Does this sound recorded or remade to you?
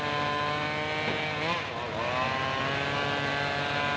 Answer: recorded